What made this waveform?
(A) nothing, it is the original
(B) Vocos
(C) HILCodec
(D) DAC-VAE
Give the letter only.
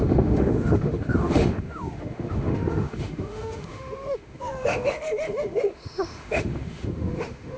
D